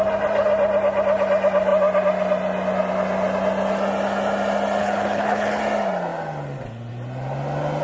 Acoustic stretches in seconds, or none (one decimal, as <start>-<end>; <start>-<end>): 0.0-4.8; 5.6-7.8